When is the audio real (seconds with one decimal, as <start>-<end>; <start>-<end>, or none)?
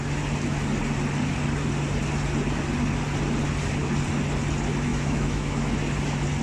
0.0-4.9; 5.7-6.4